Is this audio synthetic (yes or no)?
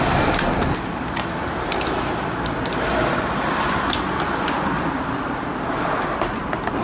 yes